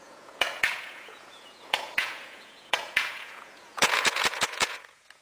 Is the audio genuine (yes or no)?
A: no